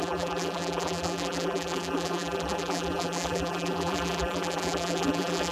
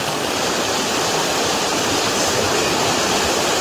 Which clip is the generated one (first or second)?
first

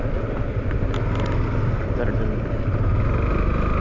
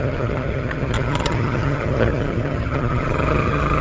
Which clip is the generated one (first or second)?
second